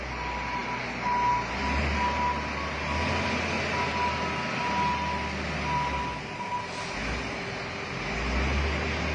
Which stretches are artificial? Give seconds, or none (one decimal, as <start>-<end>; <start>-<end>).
none

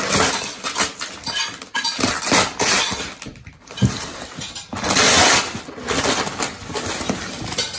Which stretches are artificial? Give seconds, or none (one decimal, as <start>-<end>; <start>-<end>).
none

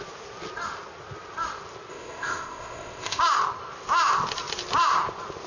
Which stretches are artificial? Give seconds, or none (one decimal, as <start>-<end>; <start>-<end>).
1.9-3.2

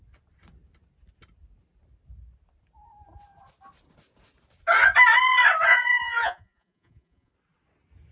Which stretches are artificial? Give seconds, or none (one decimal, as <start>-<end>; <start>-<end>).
5.7-7.3

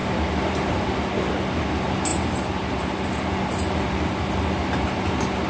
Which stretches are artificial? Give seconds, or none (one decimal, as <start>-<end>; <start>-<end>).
none

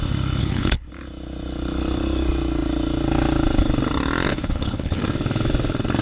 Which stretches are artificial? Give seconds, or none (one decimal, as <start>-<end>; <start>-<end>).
0.4-0.9; 4.3-5.0